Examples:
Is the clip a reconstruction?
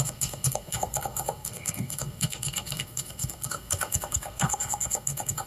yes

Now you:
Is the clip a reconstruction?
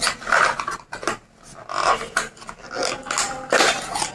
no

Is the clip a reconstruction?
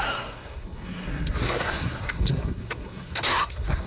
yes